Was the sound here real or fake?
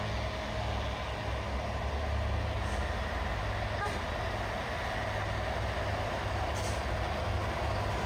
real